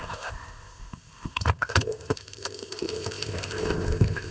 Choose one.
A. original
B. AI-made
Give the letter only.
B